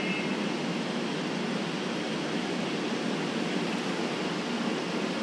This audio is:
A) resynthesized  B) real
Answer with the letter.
B